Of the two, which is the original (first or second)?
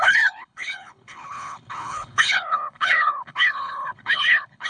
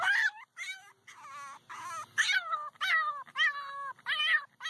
second